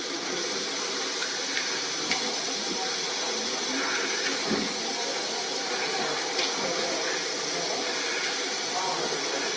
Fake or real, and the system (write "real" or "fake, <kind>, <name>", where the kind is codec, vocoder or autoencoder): real